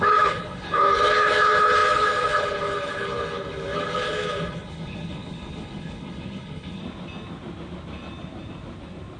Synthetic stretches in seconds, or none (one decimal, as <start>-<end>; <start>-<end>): 0.0-6.8